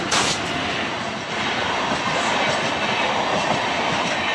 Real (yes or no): yes